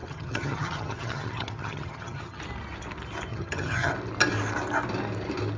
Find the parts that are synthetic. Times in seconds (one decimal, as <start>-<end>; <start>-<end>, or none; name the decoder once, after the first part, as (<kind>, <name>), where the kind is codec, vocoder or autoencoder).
0.0-2.4 (vocoder, HiFi-GAN); 3.3-3.9